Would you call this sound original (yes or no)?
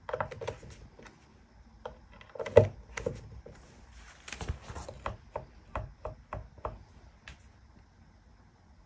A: yes